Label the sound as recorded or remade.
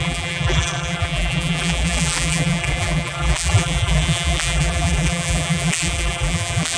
remade